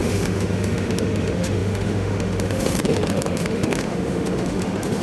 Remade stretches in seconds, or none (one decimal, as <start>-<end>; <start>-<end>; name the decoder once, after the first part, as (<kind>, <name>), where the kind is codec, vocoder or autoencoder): 0.0-5.0 (autoencoder, DAC-VAE)